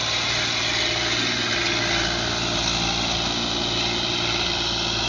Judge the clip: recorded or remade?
recorded